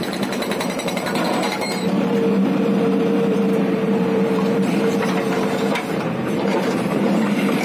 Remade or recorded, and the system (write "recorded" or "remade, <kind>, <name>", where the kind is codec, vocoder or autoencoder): remade, vocoder, BigVGAN v2